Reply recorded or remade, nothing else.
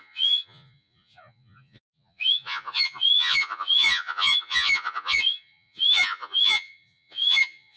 remade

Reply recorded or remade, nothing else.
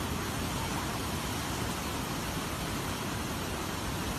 recorded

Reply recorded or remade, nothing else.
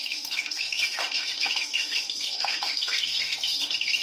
remade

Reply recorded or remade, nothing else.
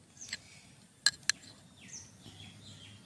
recorded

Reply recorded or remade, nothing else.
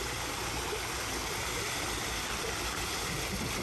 recorded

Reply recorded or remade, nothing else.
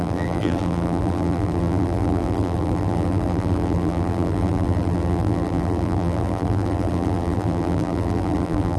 remade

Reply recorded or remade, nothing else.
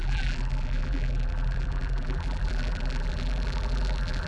remade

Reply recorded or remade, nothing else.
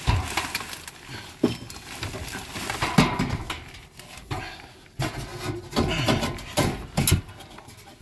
recorded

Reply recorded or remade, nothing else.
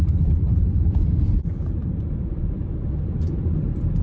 remade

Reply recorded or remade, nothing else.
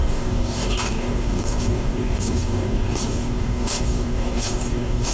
remade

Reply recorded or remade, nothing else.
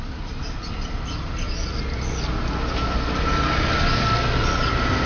recorded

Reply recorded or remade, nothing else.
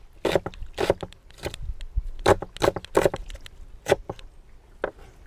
recorded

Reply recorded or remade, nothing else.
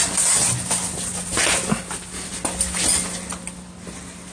recorded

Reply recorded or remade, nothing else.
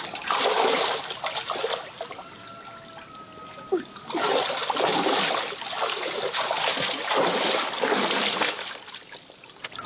recorded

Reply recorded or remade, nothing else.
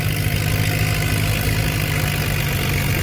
recorded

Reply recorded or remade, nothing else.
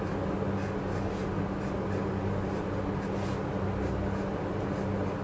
recorded